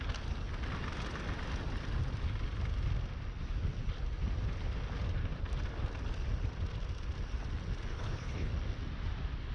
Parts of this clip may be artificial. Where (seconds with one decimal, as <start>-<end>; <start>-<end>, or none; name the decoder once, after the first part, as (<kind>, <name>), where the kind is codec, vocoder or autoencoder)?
7.9-8.5 (codec, HILCodec)

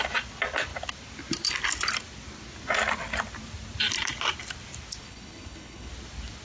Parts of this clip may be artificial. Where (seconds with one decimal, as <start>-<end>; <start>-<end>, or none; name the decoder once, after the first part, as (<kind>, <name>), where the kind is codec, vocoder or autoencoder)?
5.0-5.9 (codec, HILCodec)